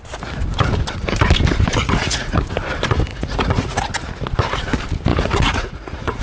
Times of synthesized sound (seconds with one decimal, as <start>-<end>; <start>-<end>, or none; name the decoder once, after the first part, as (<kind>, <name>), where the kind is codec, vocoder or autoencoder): 1.8-2.4 (vocoder, Vocos); 3.1-3.9; 5.1-6.2

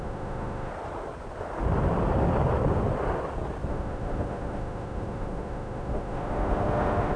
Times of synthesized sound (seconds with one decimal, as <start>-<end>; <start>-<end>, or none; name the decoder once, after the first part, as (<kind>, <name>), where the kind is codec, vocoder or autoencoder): 0.0-0.7 (autoencoder, DAC-VAE); 3.7-7.2

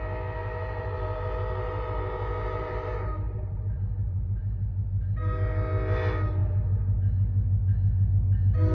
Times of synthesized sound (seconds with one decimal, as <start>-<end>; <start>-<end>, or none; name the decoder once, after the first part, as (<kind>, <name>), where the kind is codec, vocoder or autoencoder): 0.4-4.4 (vocoder, BigVGAN v2)

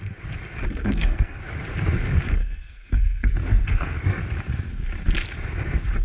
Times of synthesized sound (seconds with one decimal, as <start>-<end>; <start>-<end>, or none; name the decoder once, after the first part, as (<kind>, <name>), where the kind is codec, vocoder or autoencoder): 0.8-1.4 (codec, SNAC); 2.4-4.2

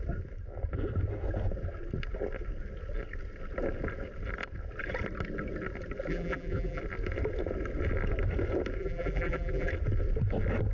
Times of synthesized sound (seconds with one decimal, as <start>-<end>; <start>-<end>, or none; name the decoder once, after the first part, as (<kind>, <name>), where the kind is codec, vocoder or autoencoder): 6.1-6.8 (vocoder, BigVGAN v2); 8.8-9.7

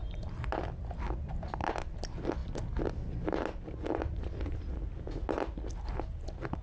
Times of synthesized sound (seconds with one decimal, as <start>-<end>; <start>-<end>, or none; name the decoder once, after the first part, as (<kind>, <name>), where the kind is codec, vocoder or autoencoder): none

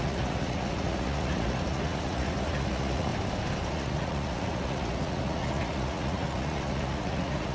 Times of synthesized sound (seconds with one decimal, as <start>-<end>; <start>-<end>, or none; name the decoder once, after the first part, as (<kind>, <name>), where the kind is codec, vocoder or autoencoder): 0.0-3.1 (vocoder, Vocos); 3.7-7.5